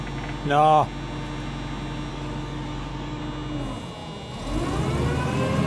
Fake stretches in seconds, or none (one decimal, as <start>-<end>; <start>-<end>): 2.1-3.2